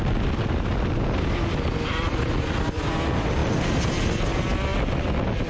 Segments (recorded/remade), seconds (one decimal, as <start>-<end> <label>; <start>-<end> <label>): 0.0-5.5 recorded